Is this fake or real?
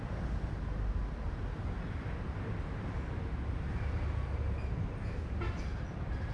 fake